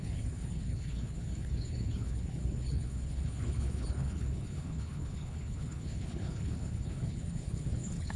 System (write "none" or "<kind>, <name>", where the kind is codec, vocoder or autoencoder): codec, HILCodec